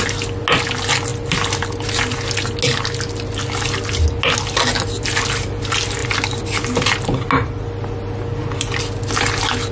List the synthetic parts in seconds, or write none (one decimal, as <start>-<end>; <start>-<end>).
none